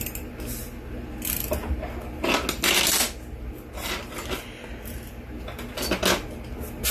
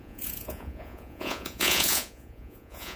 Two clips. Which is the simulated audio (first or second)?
second